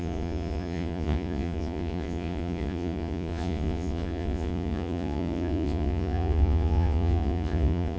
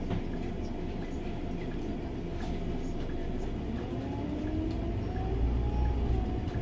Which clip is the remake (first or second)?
first